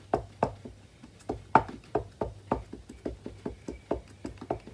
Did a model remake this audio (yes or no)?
no